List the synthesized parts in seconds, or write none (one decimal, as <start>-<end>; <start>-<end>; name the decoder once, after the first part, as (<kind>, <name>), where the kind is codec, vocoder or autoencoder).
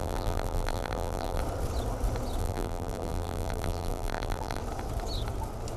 0.0-1.4 (vocoder, BigVGAN v2); 2.4-4.6